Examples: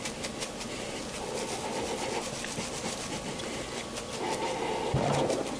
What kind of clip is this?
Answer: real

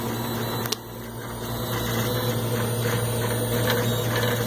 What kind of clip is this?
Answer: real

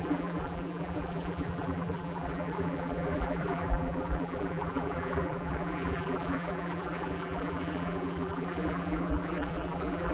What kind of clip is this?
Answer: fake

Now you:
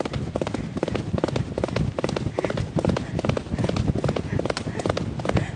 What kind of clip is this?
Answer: real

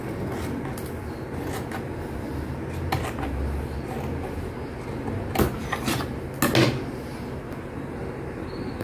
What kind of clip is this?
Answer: real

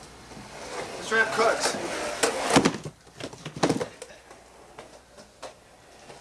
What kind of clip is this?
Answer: real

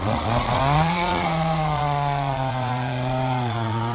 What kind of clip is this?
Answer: fake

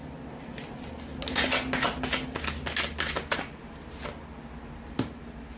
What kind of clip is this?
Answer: real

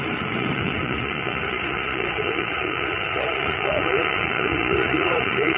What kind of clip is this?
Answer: fake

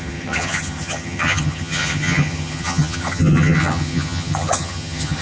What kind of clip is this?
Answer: fake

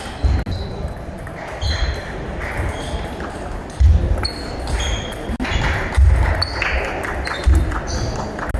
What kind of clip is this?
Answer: real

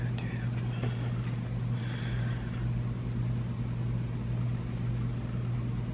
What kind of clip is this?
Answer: real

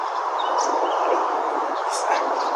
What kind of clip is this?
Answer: real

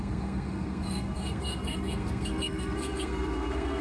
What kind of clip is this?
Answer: fake